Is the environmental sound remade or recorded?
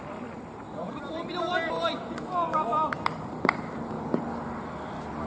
remade